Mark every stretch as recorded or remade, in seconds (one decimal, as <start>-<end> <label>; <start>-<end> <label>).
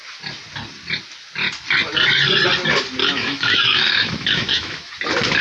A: 0.0-3.0 recorded; 3.0-4.9 remade; 4.9-5.4 recorded